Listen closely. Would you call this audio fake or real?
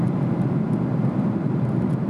fake